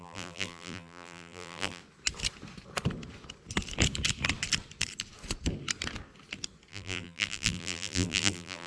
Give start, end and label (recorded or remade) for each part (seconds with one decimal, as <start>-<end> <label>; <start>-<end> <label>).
0.0-1.8 remade; 1.8-6.7 recorded; 6.7-8.7 remade